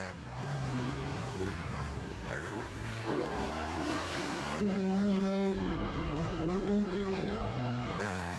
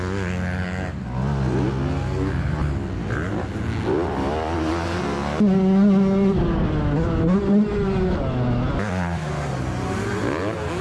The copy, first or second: first